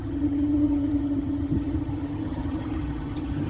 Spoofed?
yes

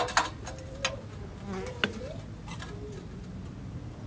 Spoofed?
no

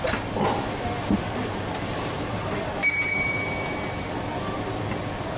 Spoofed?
no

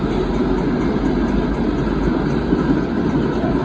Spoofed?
no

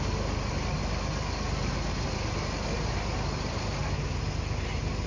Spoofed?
no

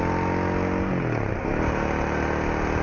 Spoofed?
no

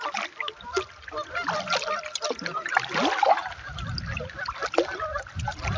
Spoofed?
no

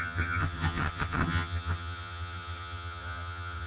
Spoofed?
yes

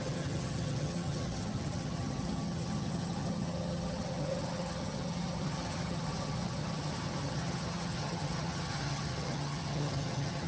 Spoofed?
yes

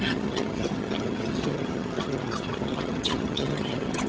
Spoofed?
yes